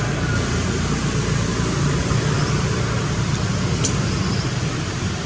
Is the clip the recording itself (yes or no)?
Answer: yes